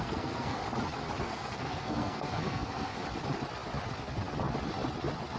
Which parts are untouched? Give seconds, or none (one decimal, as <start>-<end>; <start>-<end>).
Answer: 0.6-1.2; 2.9-5.4